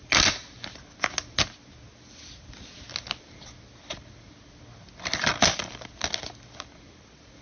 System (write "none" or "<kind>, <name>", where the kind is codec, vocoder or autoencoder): none